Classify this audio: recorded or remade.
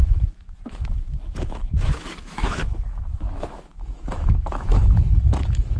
remade